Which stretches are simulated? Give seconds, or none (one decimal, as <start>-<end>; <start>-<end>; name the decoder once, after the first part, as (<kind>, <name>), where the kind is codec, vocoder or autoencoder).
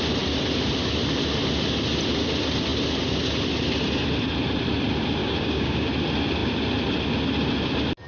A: 5.2-5.9 (codec, DAC)